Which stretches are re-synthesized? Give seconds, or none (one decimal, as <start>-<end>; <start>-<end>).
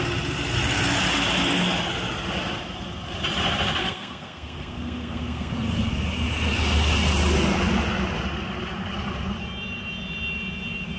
3.8-5.5